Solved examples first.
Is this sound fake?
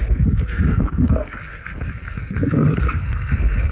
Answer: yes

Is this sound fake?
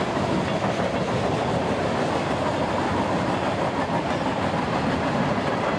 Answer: no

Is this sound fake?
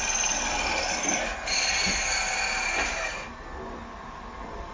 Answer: no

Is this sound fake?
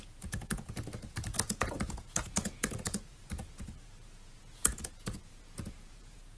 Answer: yes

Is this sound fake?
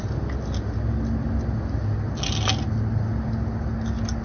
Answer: no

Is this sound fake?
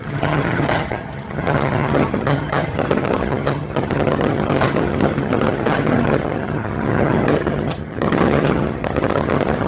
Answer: yes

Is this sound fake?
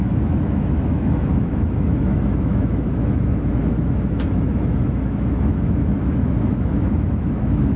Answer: yes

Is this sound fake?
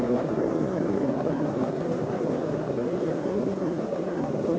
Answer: yes